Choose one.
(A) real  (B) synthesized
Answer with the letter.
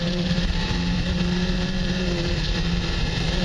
B